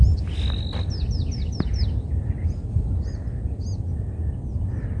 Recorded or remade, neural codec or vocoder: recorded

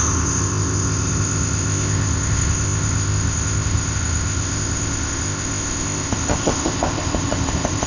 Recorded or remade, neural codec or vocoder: remade, codec, ZipCodec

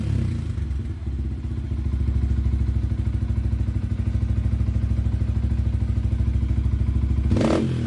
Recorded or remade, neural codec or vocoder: recorded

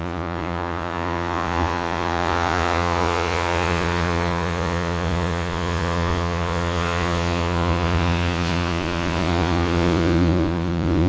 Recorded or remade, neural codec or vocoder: remade, vocoder, Vocos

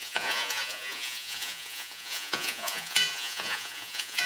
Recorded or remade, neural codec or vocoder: remade, vocoder, Vocos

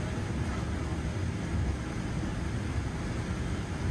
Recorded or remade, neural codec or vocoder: recorded